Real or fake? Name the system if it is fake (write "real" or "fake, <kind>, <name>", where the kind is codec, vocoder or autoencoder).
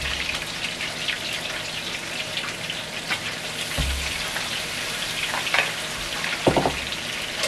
real